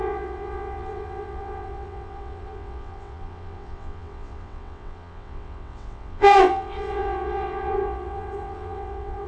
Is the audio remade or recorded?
remade